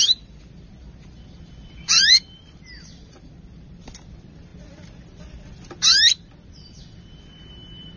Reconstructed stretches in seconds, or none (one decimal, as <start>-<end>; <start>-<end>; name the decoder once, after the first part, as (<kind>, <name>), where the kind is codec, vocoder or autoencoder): 0.0-8.0 (vocoder, BigVGAN v2)